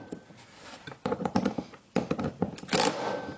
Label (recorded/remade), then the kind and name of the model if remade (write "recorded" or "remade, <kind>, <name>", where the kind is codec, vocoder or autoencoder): remade, vocoder, BigVGAN v2